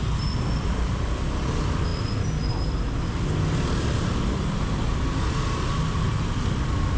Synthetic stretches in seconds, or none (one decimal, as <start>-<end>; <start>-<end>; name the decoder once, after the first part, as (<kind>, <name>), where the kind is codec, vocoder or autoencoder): none